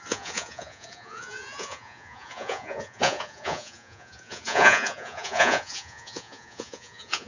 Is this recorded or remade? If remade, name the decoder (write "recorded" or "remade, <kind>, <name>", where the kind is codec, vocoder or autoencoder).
remade, vocoder, Vocos